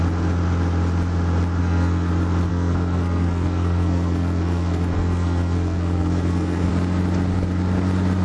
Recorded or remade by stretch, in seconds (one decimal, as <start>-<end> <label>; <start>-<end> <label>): 0.0-1.6 recorded; 1.6-2.1 remade; 2.1-2.5 recorded; 2.5-6.7 remade; 6.7-8.2 recorded